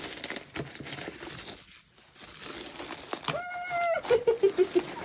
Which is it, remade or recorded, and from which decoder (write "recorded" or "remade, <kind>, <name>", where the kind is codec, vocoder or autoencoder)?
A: recorded